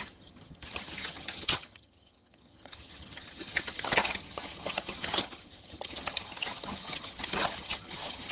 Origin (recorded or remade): remade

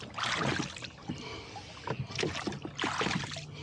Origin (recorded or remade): recorded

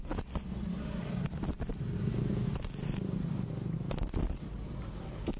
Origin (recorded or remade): recorded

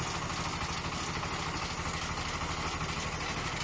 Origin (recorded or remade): recorded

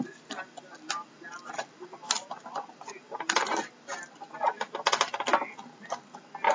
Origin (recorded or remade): recorded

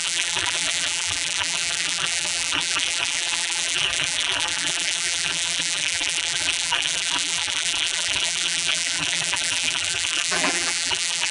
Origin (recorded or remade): remade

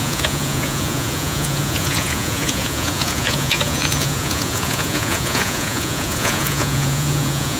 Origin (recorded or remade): remade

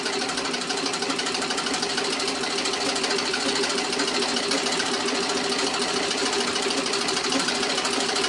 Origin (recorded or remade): recorded